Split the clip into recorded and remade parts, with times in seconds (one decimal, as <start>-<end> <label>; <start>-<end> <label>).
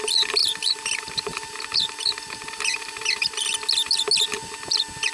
0.0-0.4 recorded; 0.4-3.5 remade; 3.5-5.1 recorded